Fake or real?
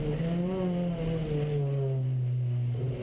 real